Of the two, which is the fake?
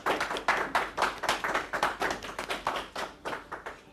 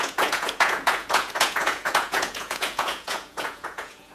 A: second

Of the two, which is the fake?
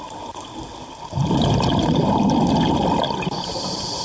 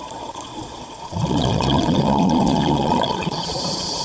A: second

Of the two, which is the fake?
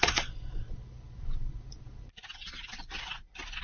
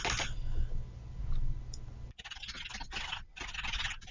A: first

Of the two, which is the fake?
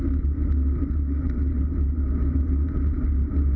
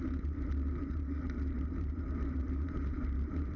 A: second